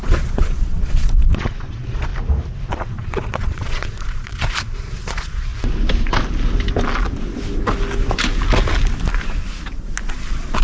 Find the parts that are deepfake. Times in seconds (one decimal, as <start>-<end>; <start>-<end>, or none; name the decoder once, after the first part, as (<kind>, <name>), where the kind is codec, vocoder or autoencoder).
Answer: 0.0-2.1 (vocoder, Vocos); 2.7-5.5; 10.1-10.6